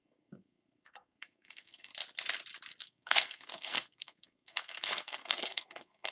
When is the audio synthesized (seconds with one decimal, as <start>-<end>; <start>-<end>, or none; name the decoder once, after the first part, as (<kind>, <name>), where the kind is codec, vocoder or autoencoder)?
0.0-1.9 (codec, SNAC); 2.8-6.1